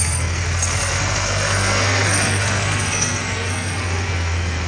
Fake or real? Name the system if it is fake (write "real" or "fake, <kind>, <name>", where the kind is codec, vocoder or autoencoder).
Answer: fake, codec, SNAC